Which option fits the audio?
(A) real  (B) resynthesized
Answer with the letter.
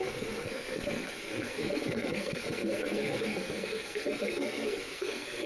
B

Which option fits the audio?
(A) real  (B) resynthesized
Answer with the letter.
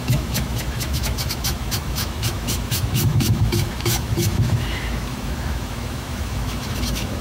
B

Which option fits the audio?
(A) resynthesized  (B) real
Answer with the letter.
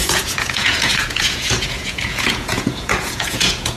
A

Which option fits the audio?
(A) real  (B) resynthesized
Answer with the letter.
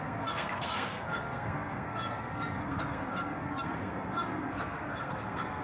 B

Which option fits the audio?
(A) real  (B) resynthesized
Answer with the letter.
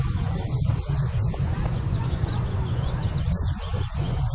B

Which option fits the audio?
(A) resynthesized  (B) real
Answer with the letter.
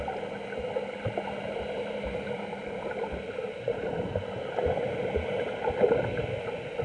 B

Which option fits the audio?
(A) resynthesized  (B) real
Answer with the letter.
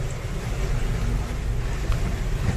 B